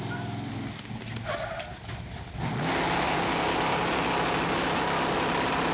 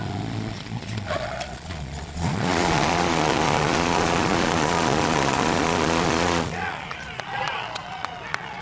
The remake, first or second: second